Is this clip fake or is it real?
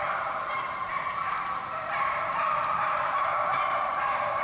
fake